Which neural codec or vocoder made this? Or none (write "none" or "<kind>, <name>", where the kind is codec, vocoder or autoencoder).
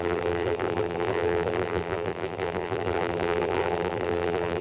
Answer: vocoder, BigVGAN v2